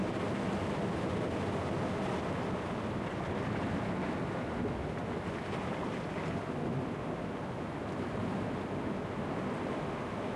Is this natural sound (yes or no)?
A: yes